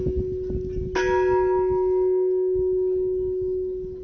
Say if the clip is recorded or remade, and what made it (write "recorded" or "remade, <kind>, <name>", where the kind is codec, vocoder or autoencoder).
recorded